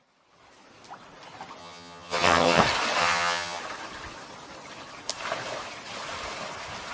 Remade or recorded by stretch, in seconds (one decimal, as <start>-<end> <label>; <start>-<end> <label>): 0.0-1.6 recorded; 1.6-2.6 remade; 2.6-3.0 recorded; 3.0-3.6 remade; 3.6-6.9 recorded